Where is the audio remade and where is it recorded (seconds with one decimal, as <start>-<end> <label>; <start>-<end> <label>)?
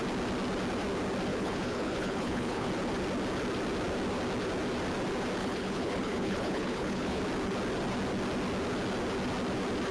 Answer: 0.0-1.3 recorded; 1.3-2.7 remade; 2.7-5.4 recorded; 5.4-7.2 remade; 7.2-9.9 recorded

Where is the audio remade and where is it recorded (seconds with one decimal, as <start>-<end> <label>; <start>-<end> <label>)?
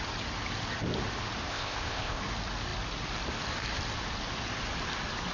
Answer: 0.0-1.5 recorded; 1.5-2.2 remade; 2.2-5.3 recorded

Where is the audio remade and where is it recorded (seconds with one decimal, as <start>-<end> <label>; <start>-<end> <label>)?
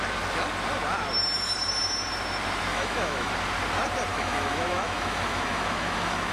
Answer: 0.0-2.7 recorded; 2.7-3.3 remade; 3.3-4.1 recorded; 4.1-6.3 remade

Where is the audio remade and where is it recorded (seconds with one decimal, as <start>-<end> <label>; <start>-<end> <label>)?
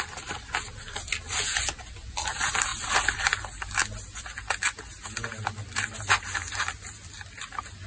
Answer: 0.0-7.9 recorded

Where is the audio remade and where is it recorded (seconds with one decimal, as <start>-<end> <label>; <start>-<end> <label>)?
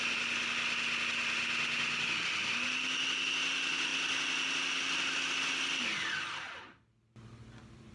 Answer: 0.0-7.9 recorded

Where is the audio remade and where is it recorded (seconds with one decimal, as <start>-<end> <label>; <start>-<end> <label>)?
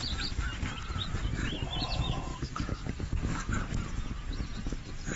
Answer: 0.0-2.3 recorded; 2.3-3.5 remade; 3.5-5.2 recorded